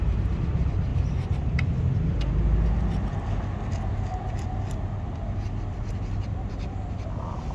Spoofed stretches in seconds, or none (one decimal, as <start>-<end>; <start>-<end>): none